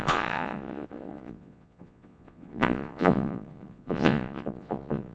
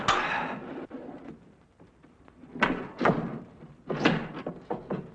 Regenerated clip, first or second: first